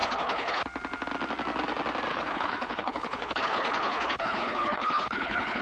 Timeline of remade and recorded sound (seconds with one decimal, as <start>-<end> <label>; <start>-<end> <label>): 0.0-0.6 remade; 0.6-2.1 recorded; 2.1-5.6 remade